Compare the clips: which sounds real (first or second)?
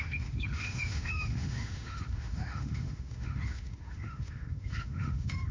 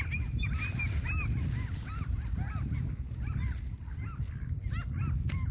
second